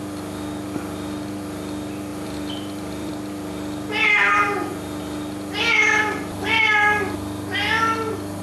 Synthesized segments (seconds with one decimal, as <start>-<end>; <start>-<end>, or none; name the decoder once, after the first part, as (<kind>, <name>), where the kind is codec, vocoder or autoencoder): 2.1-3.1 (vocoder, BigVGAN v2)